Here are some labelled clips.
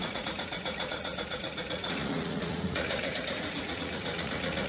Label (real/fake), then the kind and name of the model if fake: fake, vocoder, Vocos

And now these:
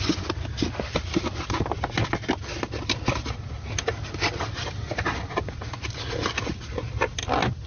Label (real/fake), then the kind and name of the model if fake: real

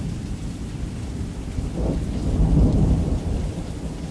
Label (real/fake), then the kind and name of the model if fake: fake, vocoder, BigVGAN v2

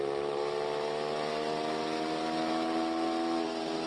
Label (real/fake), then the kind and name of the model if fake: real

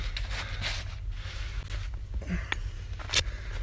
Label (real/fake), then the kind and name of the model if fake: real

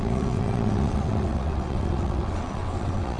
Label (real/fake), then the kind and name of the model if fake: fake, vocoder, WaveNeXt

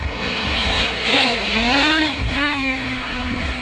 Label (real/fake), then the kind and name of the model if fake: fake, codec, SNAC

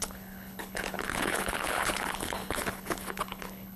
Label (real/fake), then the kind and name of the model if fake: fake, codec, HILCodec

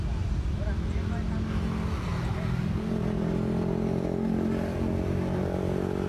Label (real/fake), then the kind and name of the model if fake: real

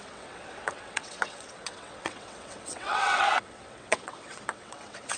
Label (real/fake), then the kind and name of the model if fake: fake, vocoder, WaveNeXt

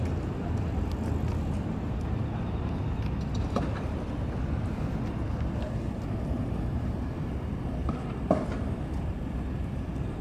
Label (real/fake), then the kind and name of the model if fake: real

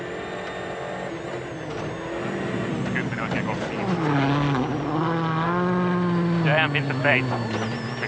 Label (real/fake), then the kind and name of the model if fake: real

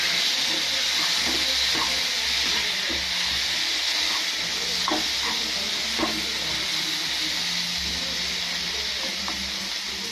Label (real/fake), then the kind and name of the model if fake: real